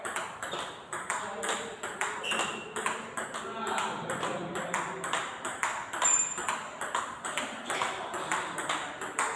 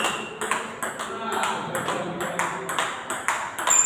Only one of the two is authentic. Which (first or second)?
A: second